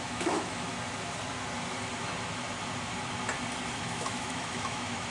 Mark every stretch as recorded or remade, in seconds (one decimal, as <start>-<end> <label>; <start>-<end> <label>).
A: 0.0-0.7 remade; 0.7-3.8 recorded; 3.8-5.1 remade